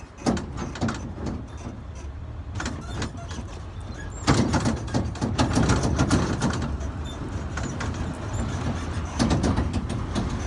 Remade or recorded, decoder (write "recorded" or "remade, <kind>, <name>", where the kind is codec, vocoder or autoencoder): recorded